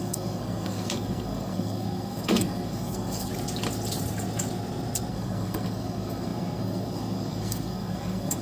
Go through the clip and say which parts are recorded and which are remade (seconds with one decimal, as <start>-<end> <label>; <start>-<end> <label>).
0.0-3.3 remade; 3.3-5.1 recorded; 5.1-8.4 remade